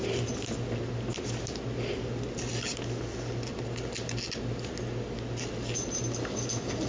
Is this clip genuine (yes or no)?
yes